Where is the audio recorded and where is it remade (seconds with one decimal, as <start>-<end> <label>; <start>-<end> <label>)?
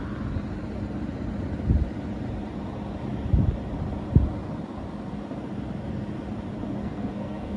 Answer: 0.0-6.8 recorded; 6.8-7.6 remade